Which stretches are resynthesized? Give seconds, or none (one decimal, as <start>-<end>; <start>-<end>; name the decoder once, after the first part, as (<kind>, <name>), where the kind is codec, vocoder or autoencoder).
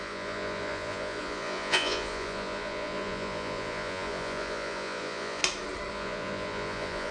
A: 0.0-5.4 (vocoder, Vocos); 5.9-7.1